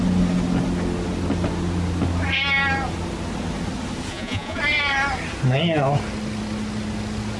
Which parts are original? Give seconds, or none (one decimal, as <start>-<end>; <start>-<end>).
0.0-4.1; 4.6-7.4